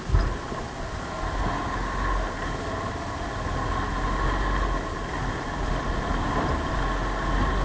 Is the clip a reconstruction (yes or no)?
no